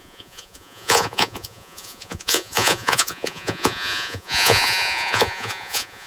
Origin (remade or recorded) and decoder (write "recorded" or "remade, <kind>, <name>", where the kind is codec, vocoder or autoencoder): remade, vocoder, Vocos